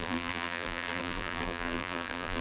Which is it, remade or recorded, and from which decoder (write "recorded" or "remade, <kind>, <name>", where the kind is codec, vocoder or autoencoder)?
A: remade, vocoder, BigVGAN v2